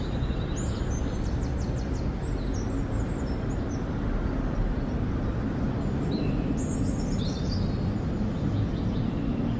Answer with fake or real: real